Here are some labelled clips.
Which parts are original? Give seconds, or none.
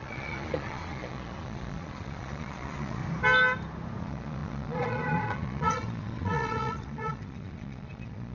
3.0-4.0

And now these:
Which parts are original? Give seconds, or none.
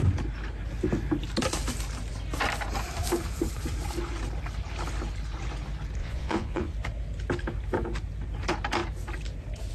0.0-6.0; 6.7-9.7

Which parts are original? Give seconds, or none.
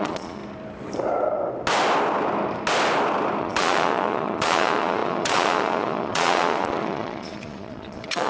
0.4-3.4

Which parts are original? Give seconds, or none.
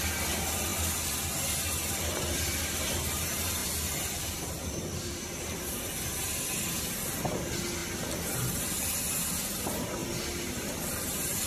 0.0-11.5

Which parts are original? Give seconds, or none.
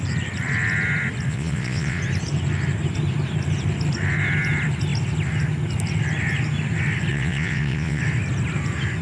0.0-1.3; 2.0-7.1; 8.0-9.0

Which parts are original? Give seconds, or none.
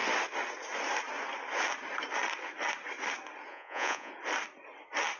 0.0-3.5; 4.1-5.2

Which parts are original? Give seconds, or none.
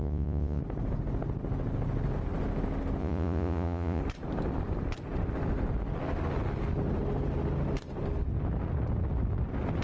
0.6-3.0; 4.0-9.8